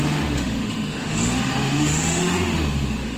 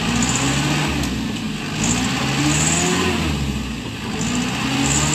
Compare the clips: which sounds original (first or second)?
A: second